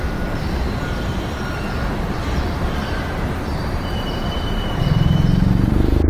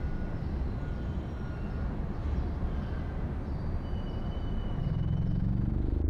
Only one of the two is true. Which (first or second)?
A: second